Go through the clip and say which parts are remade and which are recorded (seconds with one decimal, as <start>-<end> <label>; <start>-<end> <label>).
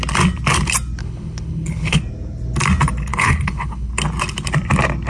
0.0-1.0 recorded; 1.0-2.0 remade; 2.0-3.1 recorded; 3.1-3.9 remade; 3.9-5.1 recorded